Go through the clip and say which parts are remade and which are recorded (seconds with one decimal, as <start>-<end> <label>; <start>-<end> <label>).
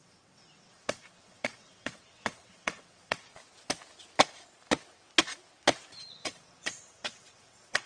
0.0-3.3 remade; 3.3-6.1 recorded; 6.1-7.9 remade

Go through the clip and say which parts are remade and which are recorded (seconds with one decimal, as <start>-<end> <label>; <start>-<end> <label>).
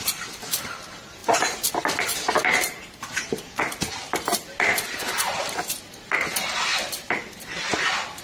0.0-2.4 recorded; 2.4-3.6 remade; 3.6-8.2 recorded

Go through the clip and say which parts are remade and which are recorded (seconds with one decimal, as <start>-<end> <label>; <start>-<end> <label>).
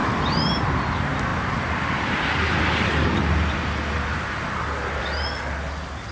0.0-0.7 remade; 0.7-6.1 recorded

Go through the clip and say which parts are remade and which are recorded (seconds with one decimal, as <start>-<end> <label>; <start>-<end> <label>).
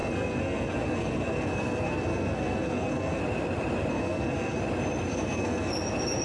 0.0-3.2 remade; 3.2-3.9 recorded; 3.9-4.6 remade; 4.6-5.1 recorded; 5.1-5.7 remade; 5.7-6.2 recorded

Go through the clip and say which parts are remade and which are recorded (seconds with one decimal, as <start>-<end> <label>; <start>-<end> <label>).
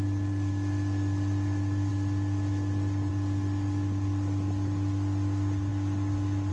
0.0-6.5 recorded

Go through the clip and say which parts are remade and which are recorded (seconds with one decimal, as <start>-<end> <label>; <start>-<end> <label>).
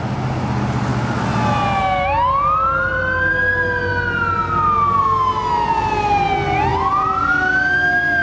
0.0-8.2 recorded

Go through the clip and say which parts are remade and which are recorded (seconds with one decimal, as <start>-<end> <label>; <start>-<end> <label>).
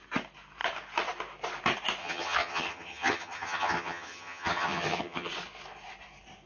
0.0-2.0 recorded; 2.0-5.3 remade; 5.3-6.5 recorded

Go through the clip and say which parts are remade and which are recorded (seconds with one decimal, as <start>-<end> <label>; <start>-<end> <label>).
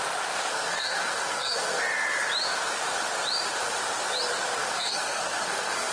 0.0-0.5 recorded; 0.5-1.8 remade; 1.8-4.6 recorded; 4.6-5.9 remade